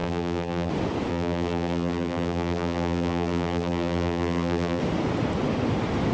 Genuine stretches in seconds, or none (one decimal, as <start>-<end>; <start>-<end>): 0.7-1.1; 4.8-6.1